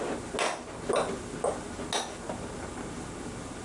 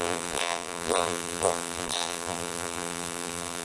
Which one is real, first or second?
first